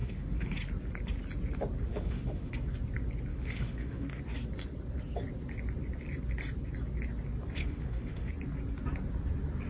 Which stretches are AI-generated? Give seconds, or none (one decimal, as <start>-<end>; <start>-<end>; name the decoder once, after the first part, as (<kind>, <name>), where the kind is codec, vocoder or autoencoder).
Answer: 0.0-0.5 (autoencoder, DAC-VAE); 1.9-2.5; 3.3-4.2; 7.6-8.3